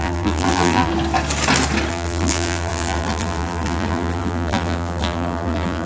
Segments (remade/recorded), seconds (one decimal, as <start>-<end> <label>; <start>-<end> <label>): 0.0-0.9 remade; 0.9-1.9 recorded; 1.9-5.9 remade